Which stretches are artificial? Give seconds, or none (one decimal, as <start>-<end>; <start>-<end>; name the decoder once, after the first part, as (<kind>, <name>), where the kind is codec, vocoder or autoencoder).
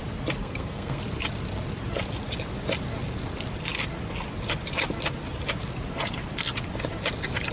0.4-1.0 (codec, SNAC)